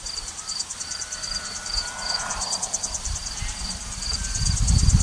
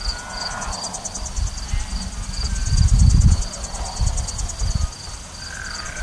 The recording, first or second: second